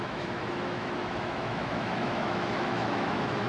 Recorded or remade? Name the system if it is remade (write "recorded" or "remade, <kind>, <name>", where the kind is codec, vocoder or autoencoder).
remade, autoencoder, DAC-VAE